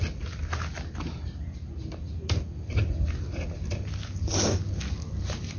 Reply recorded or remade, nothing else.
recorded